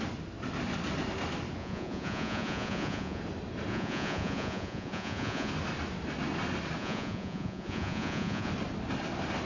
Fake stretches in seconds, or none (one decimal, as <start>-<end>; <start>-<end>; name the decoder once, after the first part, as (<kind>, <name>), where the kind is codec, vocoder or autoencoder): 1.6-3.2 (vocoder, Vocos); 3.7-5.5; 6.8-8.5